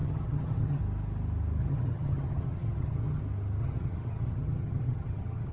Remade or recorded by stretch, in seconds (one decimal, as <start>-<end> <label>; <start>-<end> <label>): 0.0-0.8 remade; 0.8-1.6 recorded; 1.6-3.2 remade; 3.2-3.6 recorded; 3.6-5.5 remade